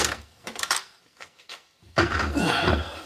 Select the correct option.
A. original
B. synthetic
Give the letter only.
B